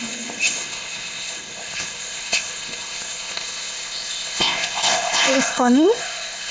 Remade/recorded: remade